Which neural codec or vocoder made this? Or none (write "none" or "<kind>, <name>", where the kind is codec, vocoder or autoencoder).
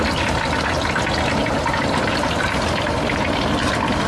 none